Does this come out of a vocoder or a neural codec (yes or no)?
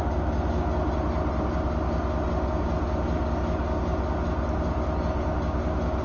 no